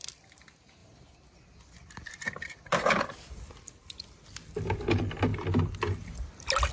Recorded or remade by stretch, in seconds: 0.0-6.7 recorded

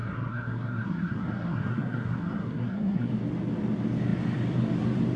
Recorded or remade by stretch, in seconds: 0.0-3.1 remade; 3.1-5.2 recorded

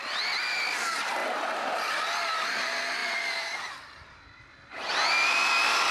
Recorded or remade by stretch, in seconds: 0.0-5.9 recorded

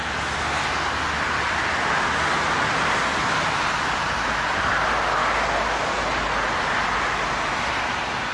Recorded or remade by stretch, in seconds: 0.0-8.3 recorded

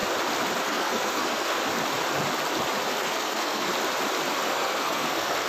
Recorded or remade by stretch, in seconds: 0.0-0.6 recorded; 0.6-1.6 remade; 1.6-2.9 recorded; 2.9-3.7 remade; 3.7-4.5 recorded; 4.5-5.5 remade